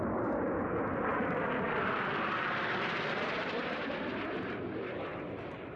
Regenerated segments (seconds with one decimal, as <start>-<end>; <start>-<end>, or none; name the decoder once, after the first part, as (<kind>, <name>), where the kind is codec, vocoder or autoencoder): 1.1-3.6 (vocoder, BigVGAN v2)